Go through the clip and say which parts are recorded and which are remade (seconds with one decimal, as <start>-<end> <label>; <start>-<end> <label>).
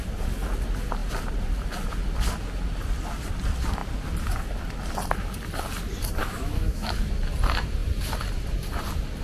0.0-6.2 recorded; 6.2-6.9 remade; 6.9-9.2 recorded